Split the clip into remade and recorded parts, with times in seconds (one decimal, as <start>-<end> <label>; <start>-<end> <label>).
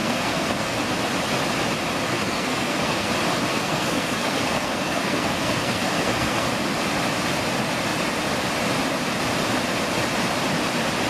0.0-0.8 remade; 0.8-2.1 recorded; 2.1-3.1 remade; 3.1-3.5 recorded; 3.5-6.5 remade; 6.5-11.1 recorded